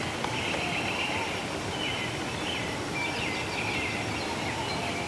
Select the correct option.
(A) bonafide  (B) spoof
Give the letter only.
A